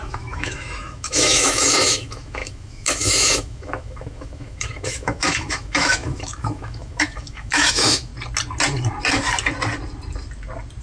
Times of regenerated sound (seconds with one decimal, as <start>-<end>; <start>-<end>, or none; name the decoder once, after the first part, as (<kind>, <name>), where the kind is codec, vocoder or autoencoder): 0.0-8.1 (autoencoder, DAC-VAE)